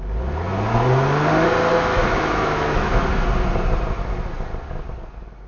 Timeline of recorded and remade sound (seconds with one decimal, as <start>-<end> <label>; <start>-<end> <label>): 0.0-1.7 recorded; 1.7-2.9 remade; 2.9-5.5 recorded